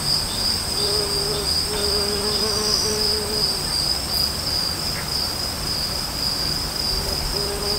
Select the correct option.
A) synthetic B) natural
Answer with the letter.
B